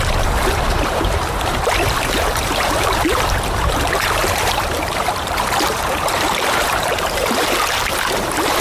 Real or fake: fake